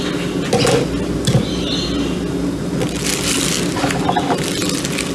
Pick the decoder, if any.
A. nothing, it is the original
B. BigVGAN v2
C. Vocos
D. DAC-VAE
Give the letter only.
A